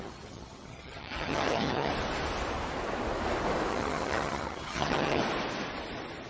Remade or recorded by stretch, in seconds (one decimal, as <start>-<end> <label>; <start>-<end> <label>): 0.0-1.9 remade; 1.9-3.7 recorded; 3.7-5.2 remade; 5.2-6.3 recorded